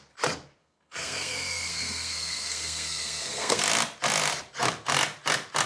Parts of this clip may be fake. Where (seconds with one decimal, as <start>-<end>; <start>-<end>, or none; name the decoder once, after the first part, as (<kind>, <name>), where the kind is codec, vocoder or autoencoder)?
0.6-3.6 (codec, SNAC)